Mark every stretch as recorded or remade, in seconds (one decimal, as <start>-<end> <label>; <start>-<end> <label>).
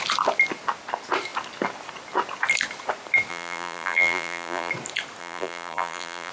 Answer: 0.0-3.3 recorded; 3.3-4.7 remade; 4.7-5.2 recorded; 5.2-6.3 remade